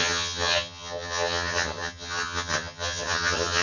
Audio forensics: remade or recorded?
remade